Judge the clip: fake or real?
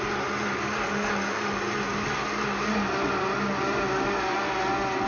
real